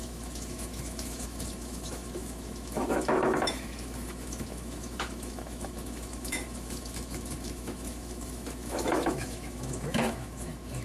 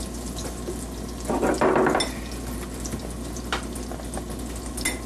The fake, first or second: first